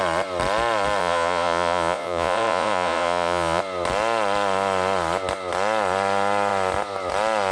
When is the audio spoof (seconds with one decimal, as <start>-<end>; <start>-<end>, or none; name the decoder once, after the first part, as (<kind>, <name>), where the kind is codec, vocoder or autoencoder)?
1.0-3.6 (vocoder, Vocos)